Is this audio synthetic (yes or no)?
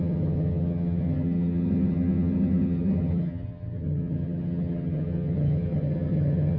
yes